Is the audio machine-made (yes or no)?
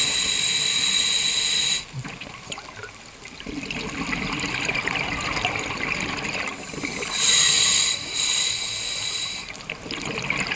no